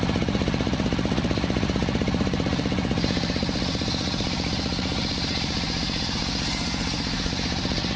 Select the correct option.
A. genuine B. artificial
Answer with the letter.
B